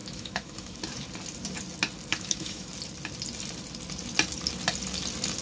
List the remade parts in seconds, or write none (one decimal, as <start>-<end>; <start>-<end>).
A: 0.0-0.8; 2.1-2.7